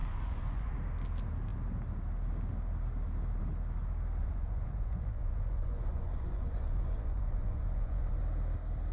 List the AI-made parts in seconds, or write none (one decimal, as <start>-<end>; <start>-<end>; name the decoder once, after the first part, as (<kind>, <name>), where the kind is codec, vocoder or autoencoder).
0.0-0.7 (vocoder, Vocos); 4.2-8.2